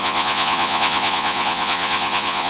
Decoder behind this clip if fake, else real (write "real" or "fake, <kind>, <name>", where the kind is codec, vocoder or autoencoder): fake, vocoder, Vocos